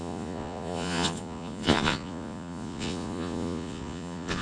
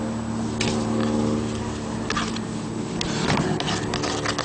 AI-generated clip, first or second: first